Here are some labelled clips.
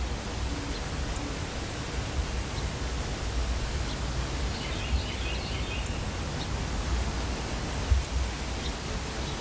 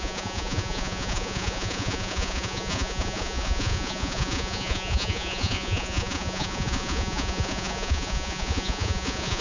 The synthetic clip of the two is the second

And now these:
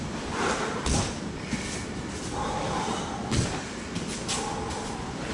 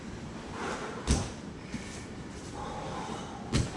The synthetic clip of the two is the first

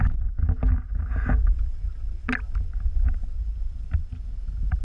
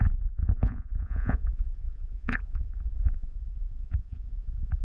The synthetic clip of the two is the second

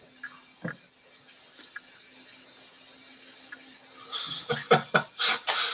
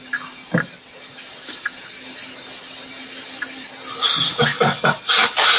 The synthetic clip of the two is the second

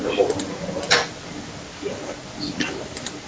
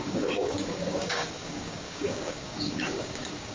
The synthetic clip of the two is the second